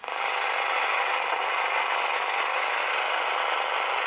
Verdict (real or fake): real